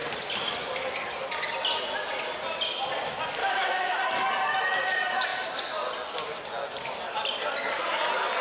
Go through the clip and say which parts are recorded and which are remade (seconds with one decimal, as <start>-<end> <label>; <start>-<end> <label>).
0.0-3.4 recorded; 3.4-4.0 remade; 4.0-8.4 recorded